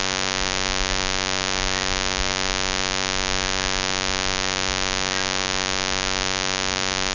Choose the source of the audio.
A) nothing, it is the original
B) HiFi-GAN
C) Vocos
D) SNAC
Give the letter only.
A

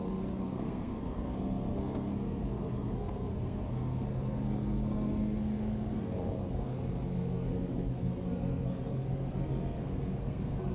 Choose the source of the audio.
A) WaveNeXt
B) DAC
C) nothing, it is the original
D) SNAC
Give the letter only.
D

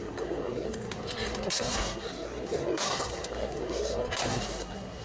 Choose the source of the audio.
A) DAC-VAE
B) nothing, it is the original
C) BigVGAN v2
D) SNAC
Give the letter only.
D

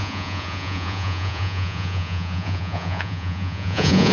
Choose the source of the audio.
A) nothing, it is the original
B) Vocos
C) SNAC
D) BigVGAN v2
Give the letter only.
B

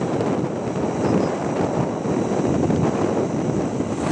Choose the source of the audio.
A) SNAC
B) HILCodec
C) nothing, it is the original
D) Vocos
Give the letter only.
C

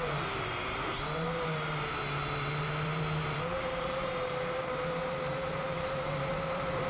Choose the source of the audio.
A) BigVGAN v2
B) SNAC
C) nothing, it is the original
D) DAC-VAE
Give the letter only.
A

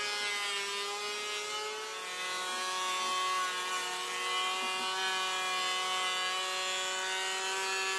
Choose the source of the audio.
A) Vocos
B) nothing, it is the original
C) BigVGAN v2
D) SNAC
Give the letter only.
B